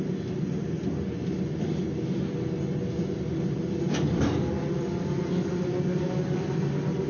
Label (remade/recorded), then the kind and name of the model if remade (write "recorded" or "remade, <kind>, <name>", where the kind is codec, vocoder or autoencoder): recorded